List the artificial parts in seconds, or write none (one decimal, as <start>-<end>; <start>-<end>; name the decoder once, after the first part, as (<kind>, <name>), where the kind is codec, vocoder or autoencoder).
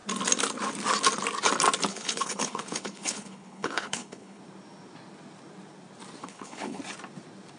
1.9-4.4 (codec, HILCodec); 6.2-6.8